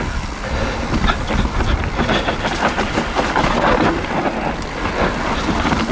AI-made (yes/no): no